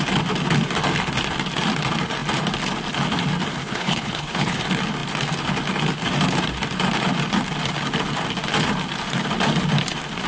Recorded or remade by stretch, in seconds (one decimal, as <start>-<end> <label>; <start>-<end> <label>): 0.0-3.6 recorded; 3.6-4.6 remade; 4.6-10.3 recorded

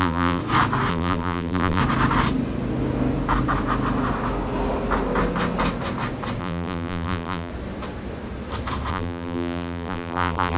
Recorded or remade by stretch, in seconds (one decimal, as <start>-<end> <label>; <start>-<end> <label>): 0.0-0.4 remade; 0.4-0.9 recorded; 0.9-1.8 remade; 1.8-6.4 recorded; 6.4-7.5 remade; 7.5-8.9 recorded; 8.9-10.6 remade

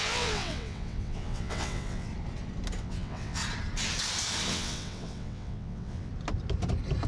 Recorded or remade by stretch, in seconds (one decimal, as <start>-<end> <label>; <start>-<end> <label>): 0.0-2.1 remade; 2.1-2.8 recorded; 2.8-3.4 remade; 3.4-4.5 recorded; 4.5-6.1 remade; 6.1-7.1 recorded